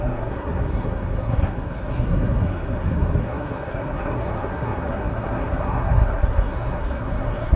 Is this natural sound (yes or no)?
no